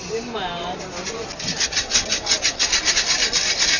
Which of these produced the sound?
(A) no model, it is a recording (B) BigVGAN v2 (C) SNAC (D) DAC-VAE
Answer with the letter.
B